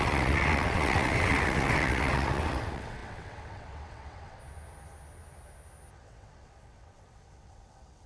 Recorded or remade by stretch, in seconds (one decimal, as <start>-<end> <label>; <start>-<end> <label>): 0.0-4.4 remade; 4.4-5.9 recorded; 5.9-8.1 remade